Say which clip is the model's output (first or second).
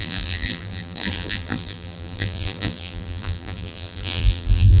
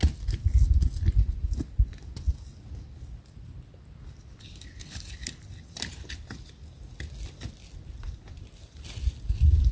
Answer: first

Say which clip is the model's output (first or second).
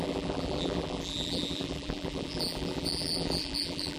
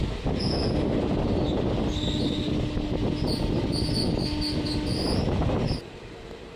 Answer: first